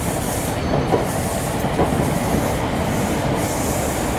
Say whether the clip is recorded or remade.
recorded